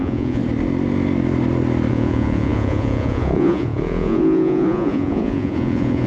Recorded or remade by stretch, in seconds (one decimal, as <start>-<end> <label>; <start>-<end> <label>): 0.0-0.4 remade; 0.4-1.9 recorded; 1.9-6.1 remade